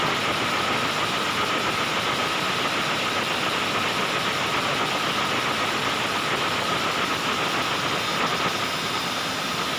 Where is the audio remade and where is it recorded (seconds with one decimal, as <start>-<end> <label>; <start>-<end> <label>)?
0.0-9.8 recorded